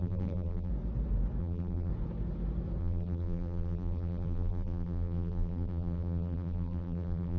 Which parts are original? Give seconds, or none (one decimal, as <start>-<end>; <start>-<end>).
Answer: 0.7-1.4; 1.9-2.8